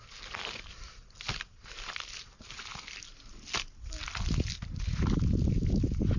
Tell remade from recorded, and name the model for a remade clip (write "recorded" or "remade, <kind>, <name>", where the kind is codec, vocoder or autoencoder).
recorded